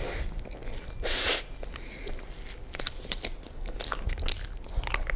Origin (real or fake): real